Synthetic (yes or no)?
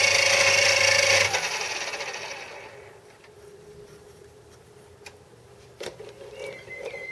yes